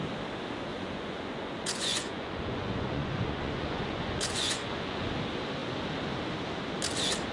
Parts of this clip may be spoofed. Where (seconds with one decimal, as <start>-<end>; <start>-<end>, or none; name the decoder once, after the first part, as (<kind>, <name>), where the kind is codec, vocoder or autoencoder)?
0.7-5.1 (vocoder, Vocos)